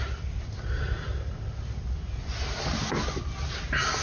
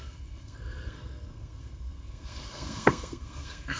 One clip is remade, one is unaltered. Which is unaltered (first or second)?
first